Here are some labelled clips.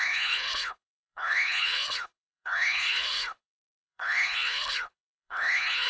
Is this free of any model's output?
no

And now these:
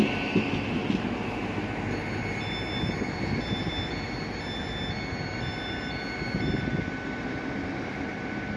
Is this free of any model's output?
yes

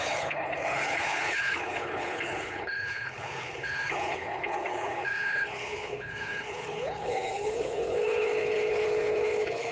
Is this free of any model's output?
no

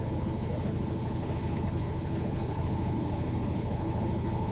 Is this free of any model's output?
no